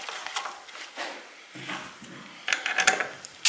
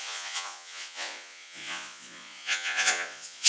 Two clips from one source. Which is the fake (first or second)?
second